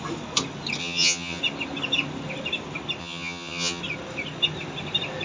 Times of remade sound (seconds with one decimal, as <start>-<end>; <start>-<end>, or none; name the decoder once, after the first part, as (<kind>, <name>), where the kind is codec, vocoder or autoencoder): 0.8-1.4 (vocoder, HiFi-GAN); 3.0-3.8